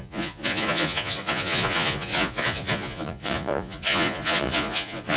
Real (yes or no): no